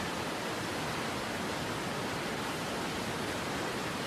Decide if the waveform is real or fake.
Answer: real